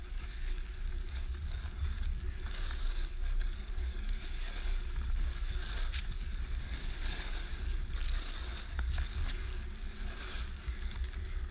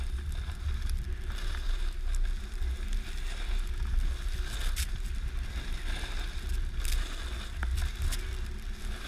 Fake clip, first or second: first